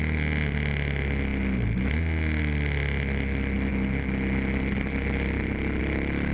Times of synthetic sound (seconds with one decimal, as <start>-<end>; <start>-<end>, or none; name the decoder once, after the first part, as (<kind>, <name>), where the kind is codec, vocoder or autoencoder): none